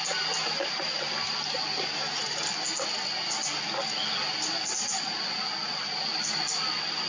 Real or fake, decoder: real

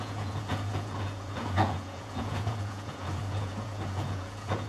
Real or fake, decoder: fake, vocoder, Vocos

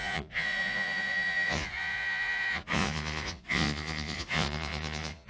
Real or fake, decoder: fake, vocoder, Vocos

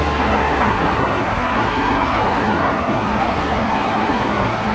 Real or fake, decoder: fake, codec, SNAC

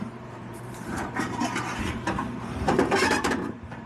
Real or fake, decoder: fake, vocoder, BigVGAN v2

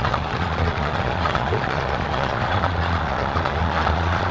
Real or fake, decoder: fake, vocoder, Vocos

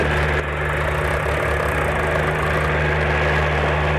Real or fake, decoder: real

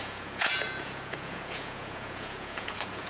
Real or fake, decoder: fake, vocoder, Vocos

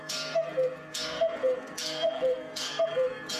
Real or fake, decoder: fake, codec, SNAC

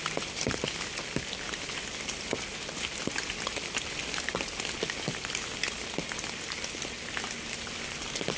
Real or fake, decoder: real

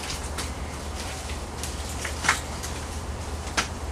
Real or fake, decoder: fake, vocoder, BigVGAN v2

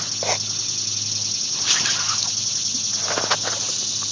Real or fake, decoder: real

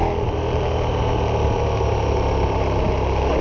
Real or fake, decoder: real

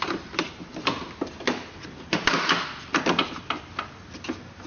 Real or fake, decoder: real